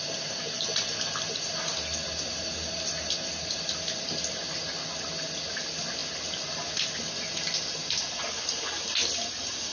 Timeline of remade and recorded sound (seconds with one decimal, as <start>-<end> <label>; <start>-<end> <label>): 0.0-9.7 recorded